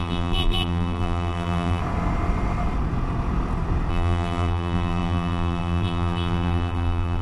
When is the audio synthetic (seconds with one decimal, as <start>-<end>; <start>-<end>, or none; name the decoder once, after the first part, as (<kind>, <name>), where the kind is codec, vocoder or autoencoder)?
0.0-1.8 (vocoder, BigVGAN v2); 3.9-7.2